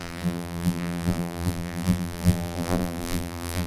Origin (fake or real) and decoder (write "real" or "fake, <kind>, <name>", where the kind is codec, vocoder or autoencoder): fake, vocoder, BigVGAN v2